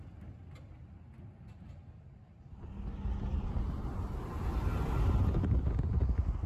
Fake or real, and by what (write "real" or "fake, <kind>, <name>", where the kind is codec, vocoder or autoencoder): real